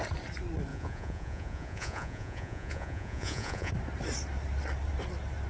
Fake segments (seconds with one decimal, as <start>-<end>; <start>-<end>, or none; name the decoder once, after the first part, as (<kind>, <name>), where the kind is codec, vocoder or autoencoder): 0.7-3.7 (vocoder, Vocos)

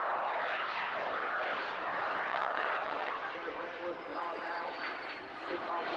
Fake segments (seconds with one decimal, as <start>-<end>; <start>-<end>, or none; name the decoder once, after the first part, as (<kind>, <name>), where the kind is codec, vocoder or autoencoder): 2.3-3.1 (vocoder, WaveNeXt); 4.1-4.7

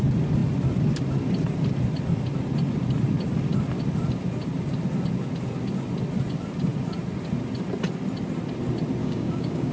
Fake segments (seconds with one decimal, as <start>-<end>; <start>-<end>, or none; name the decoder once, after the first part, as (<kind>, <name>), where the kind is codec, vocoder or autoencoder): 9.0-9.7 (codec, DAC)